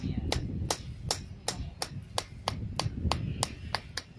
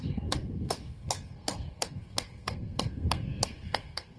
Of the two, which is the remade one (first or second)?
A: second